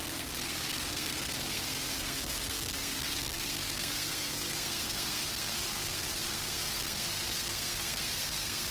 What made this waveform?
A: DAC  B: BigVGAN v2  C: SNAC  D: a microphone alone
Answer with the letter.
C